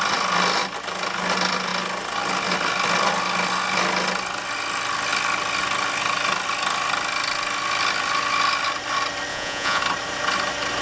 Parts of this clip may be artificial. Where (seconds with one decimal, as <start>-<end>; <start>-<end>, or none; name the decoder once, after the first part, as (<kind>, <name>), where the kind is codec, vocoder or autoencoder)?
9.3-9.8 (vocoder, Vocos)